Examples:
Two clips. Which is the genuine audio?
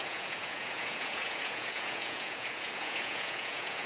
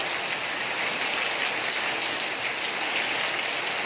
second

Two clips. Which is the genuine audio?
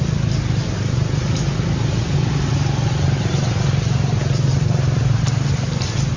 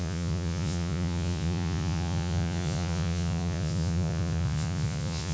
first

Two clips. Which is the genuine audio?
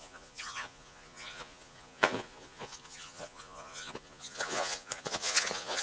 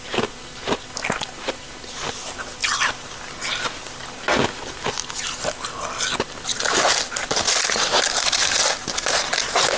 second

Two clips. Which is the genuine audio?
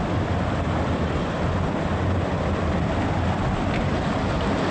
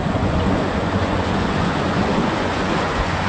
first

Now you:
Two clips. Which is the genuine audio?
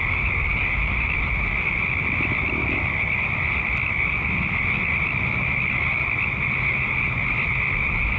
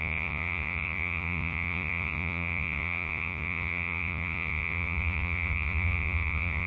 first